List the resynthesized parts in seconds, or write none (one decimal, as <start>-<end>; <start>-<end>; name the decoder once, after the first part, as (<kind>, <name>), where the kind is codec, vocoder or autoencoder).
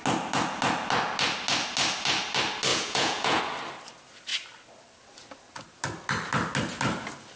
2.7-3.4 (vocoder, Vocos)